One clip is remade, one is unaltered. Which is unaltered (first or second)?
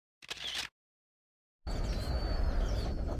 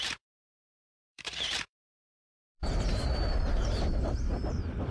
first